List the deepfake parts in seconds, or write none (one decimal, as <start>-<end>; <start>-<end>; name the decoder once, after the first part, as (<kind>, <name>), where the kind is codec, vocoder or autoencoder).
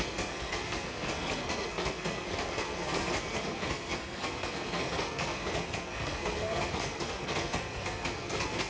0.0-8.7 (codec, SNAC)